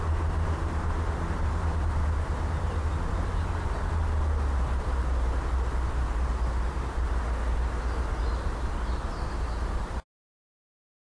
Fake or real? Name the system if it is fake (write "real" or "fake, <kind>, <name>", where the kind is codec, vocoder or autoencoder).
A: real